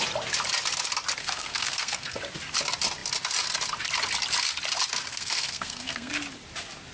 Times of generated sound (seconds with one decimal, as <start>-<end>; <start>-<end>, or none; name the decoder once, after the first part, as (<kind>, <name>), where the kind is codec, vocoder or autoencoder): 1.2-2.2 (codec, SNAC); 5.1-6.1